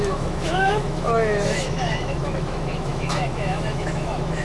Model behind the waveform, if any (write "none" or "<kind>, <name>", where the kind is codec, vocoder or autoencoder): autoencoder, DAC-VAE